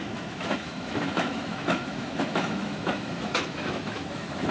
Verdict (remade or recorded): remade